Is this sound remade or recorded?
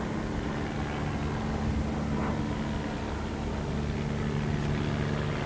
recorded